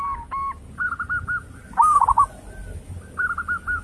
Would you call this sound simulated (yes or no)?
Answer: no